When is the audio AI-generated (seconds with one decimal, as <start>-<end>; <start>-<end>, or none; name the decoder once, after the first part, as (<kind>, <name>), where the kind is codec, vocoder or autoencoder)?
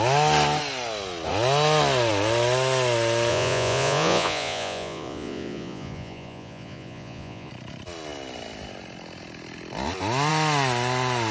3.3-7.5 (vocoder, Vocos)